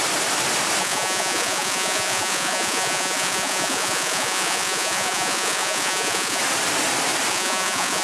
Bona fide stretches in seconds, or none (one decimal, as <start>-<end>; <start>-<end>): 0.0-0.8; 6.4-7.3